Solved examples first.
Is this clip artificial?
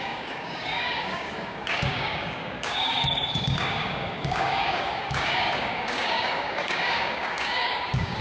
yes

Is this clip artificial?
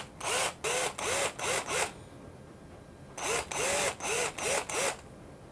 no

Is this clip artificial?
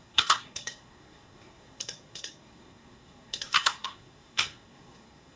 yes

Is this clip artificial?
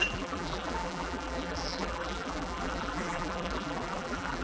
yes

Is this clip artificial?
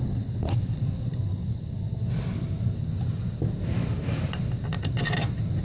no